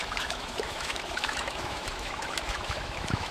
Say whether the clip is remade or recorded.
remade